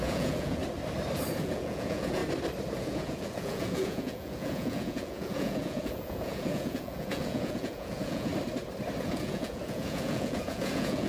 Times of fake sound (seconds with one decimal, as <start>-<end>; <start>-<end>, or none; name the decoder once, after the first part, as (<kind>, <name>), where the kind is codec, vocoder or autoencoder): 0.0-0.6 (vocoder, Vocos); 1.4-2.2; 2.8-8.3; 9.0-11.1